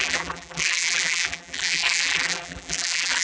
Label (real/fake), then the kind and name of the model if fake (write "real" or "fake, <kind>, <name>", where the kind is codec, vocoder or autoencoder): fake, vocoder, BigVGAN v2